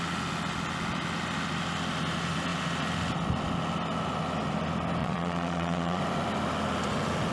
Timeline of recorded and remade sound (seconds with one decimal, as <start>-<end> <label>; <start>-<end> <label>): 0.0-5.0 recorded; 5.0-6.0 remade; 6.0-7.3 recorded